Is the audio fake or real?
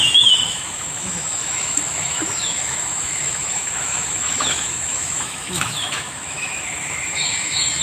fake